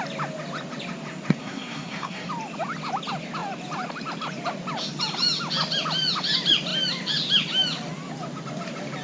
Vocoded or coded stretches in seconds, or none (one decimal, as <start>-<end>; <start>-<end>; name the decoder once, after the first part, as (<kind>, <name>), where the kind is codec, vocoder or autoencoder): 1.4-2.3 (codec, SNAC)